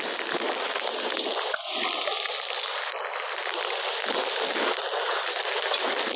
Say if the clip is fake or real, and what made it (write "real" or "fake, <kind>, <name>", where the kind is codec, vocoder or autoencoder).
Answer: real